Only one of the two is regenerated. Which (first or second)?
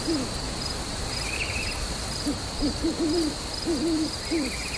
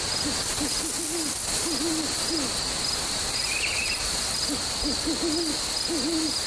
first